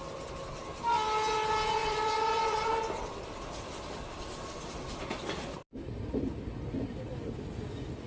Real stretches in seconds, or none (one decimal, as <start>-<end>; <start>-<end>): 0.0-1.8; 5.5-8.1

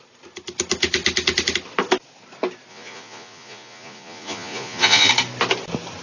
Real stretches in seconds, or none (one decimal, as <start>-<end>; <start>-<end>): 0.0-2.7; 5.1-6.0

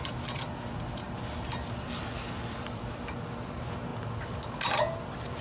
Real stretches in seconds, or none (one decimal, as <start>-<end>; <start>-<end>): 0.0-5.4

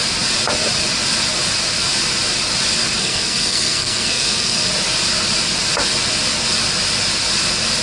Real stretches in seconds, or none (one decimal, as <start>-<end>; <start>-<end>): 0.0-3.0; 4.7-7.8

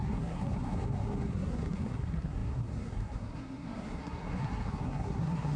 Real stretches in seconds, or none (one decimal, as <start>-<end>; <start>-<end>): none